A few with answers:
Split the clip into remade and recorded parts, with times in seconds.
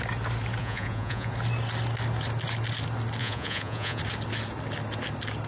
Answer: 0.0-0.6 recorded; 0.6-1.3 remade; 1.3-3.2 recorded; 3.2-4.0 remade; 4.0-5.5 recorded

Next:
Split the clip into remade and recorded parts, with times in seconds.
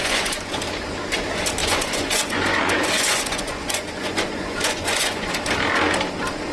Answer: 0.0-0.5 remade; 0.5-1.6 recorded; 1.6-5.3 remade; 5.3-6.5 recorded